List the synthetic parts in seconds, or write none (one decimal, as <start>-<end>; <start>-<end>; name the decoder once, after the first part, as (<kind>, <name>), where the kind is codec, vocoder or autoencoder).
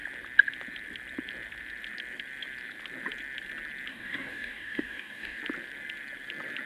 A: 3.9-5.4 (codec, DAC)